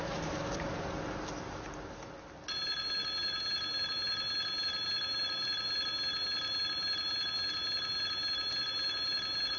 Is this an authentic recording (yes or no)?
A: yes